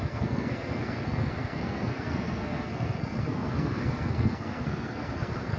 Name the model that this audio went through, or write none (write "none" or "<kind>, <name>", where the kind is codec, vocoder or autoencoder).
codec, SNAC